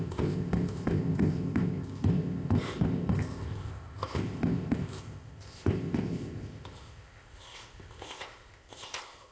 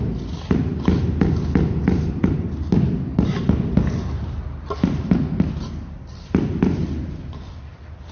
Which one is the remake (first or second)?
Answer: first